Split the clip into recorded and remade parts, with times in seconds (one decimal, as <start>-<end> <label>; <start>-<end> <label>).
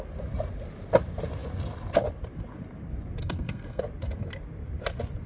0.0-3.2 recorded; 3.2-3.8 remade; 3.8-5.3 recorded